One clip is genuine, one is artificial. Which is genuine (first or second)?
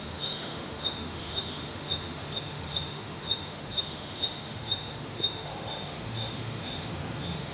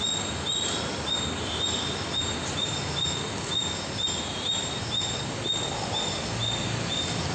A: second